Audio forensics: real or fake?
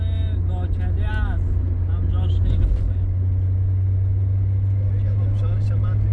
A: real